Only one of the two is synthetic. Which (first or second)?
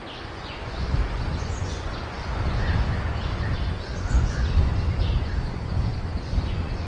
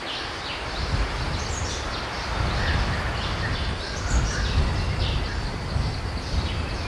first